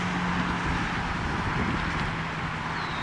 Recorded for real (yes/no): yes